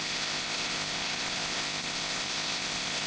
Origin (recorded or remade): remade